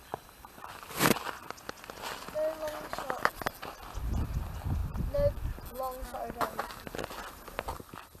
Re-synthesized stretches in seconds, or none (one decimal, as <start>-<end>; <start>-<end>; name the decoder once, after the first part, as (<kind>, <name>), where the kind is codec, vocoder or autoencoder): none